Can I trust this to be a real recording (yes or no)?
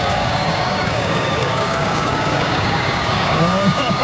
no